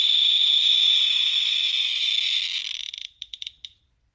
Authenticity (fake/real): real